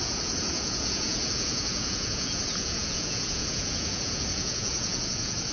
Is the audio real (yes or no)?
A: no